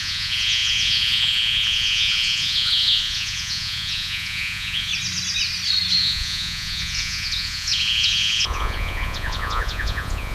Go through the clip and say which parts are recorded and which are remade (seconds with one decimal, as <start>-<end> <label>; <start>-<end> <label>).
0.0-4.9 remade; 4.9-6.0 recorded; 6.0-10.3 remade